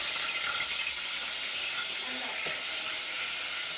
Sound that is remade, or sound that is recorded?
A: recorded